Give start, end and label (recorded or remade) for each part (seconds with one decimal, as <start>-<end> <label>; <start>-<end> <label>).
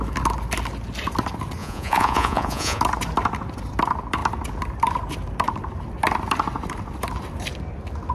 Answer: 0.0-1.6 recorded; 1.6-2.8 remade; 2.8-8.1 recorded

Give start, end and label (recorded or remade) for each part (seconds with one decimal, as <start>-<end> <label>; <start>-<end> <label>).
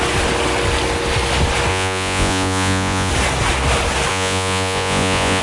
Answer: 0.0-1.7 recorded; 1.7-3.1 remade; 3.1-4.1 recorded; 4.1-5.4 remade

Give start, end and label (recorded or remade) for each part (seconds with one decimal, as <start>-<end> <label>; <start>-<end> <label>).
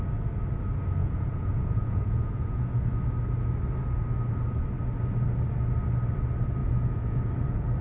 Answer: 0.0-1.0 recorded; 1.0-2.9 remade; 2.9-6.6 recorded; 6.6-7.3 remade; 7.3-7.8 recorded